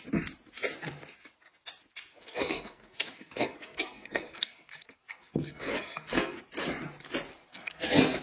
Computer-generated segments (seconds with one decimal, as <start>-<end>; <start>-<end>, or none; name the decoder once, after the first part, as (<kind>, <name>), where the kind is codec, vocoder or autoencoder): 2.1-6.4 (codec, SNAC); 7.5-8.2